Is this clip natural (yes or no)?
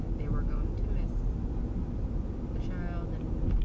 yes